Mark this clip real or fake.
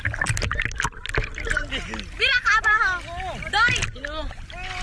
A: real